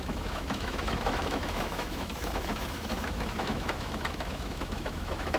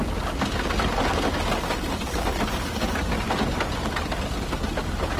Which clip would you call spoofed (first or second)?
first